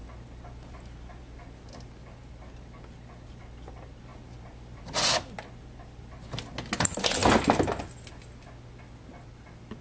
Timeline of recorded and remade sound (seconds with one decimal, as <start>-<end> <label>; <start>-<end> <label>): 0.0-9.8 recorded